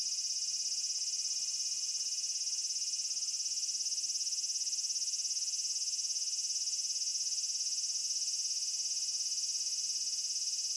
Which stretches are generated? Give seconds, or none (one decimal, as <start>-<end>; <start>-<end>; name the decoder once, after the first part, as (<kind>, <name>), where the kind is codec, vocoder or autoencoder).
none